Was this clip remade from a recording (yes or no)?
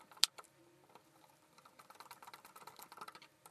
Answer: yes